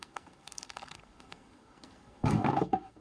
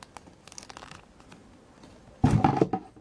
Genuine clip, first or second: second